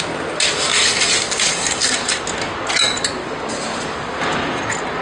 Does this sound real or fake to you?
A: real